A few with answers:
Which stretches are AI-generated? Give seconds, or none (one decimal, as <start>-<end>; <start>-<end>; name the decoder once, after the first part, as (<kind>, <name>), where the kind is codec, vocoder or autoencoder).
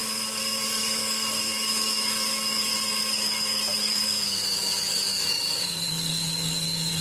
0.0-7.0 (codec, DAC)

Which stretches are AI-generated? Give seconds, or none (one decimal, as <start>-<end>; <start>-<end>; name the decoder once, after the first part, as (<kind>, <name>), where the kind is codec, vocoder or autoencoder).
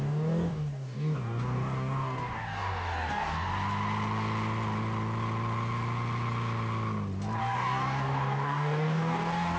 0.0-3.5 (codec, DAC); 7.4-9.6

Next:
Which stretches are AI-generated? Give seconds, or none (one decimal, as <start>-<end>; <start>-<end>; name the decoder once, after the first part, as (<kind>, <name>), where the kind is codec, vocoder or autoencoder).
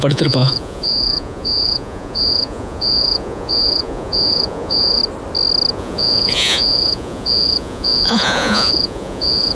0.0-5.0 (vocoder, Vocos); 5.7-9.5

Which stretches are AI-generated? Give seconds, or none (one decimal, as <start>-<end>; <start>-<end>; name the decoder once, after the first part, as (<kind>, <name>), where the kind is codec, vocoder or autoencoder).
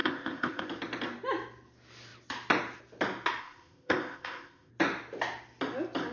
0.0-0.7 (codec, ZipCodec); 3.4-4.7